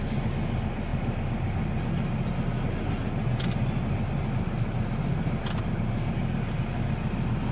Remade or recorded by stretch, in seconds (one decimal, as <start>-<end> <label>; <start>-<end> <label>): 0.0-7.5 recorded